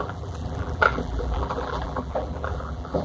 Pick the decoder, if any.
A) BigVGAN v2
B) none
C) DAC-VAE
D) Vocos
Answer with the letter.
A